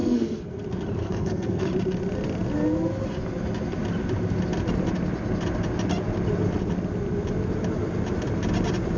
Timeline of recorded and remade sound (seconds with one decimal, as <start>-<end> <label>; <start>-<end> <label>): 0.0-0.6 remade; 0.6-1.0 recorded; 1.0-1.7 remade; 1.7-9.0 recorded